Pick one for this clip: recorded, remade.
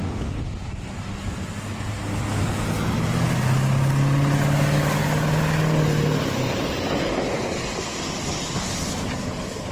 recorded